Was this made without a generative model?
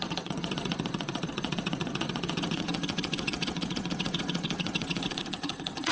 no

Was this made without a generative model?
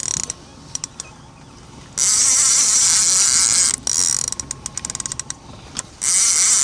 yes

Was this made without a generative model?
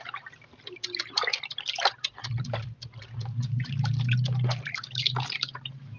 yes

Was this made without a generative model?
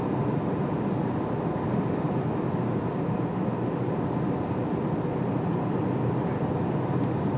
yes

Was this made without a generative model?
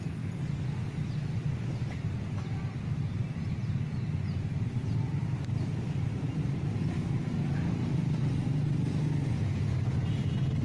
yes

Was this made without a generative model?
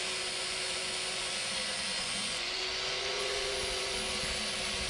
no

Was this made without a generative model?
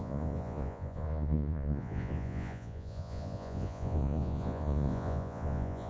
no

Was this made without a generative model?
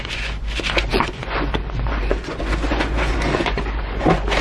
no